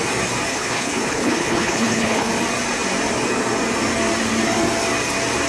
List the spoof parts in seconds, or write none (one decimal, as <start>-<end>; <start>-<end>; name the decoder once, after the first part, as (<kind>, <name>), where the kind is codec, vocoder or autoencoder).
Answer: 0.5-2.3 (codec, HILCodec)